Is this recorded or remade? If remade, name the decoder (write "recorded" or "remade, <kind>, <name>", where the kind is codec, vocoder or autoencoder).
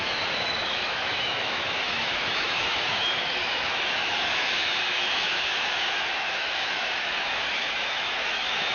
remade, autoencoder, DAC-VAE